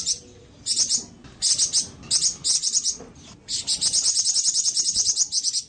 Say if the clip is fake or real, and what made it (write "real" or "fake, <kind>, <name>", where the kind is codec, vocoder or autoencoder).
real